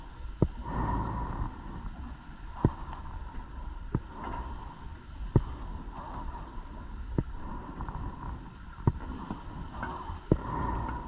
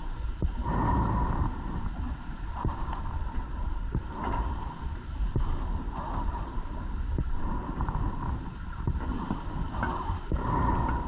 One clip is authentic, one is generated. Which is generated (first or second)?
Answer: second